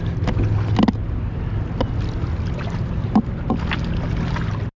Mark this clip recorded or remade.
recorded